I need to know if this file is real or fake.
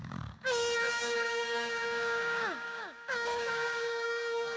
fake